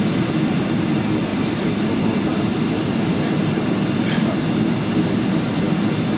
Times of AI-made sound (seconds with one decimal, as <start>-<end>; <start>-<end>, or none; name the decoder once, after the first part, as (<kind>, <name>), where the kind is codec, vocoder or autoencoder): 2.3-3.3 (vocoder, BigVGAN v2)